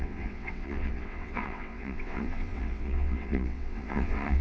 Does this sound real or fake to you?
fake